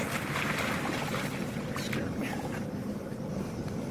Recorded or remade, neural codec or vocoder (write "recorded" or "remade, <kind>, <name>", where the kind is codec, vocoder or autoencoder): recorded